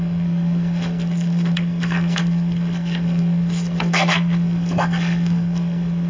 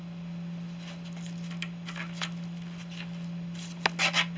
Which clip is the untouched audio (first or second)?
second